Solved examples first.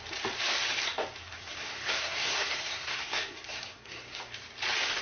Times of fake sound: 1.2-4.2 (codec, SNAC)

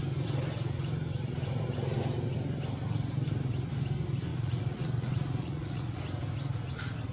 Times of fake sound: 4.3-6.0 (vocoder, Vocos)

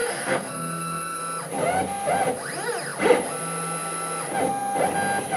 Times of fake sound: 0.0-1.2 (codec, SNAC)

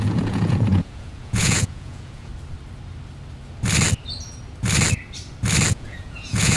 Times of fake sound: 0.0-2.3 (vocoder, Vocos); 5.7-6.6